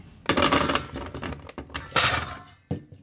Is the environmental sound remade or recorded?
recorded